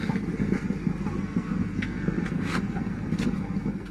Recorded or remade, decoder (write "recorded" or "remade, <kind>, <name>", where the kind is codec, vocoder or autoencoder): remade, codec, SNAC